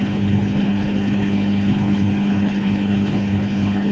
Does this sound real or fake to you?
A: fake